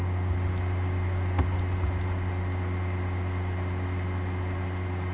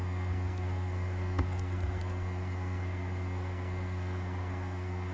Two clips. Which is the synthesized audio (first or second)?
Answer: second